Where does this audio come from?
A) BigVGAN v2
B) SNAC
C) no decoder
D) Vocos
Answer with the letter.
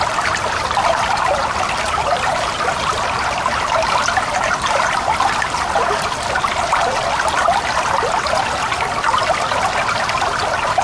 C